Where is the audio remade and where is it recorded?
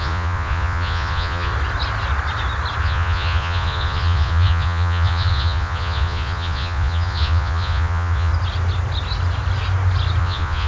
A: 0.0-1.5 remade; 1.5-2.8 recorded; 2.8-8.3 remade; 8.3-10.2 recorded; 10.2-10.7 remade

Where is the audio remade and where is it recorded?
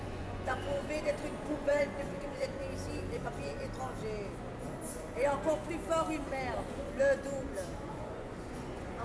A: 0.0-0.8 remade; 0.8-1.5 recorded; 1.5-2.6 remade; 2.6-7.8 recorded; 7.8-9.0 remade